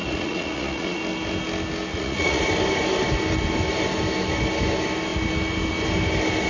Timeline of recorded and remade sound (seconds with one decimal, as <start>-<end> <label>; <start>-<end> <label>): 0.0-1.0 remade; 1.0-1.9 recorded; 1.9-2.4 remade; 2.4-6.5 recorded